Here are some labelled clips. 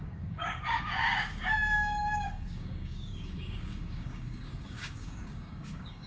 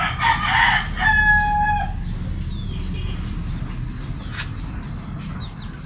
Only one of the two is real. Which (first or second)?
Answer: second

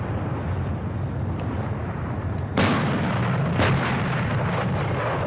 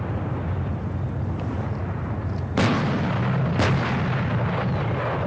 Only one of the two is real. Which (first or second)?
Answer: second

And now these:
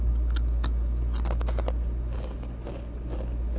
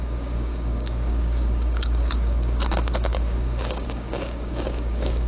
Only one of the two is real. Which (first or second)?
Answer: first